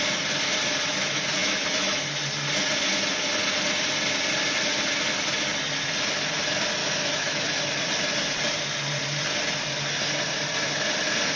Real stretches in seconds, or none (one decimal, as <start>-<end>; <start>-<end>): 0.0-1.4; 2.2-6.8; 7.6-11.4